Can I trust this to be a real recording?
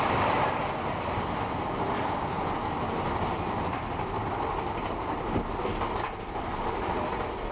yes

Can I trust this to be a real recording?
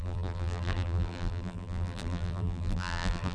no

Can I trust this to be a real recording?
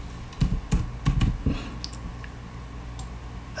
yes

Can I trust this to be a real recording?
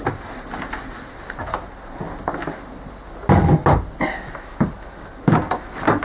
yes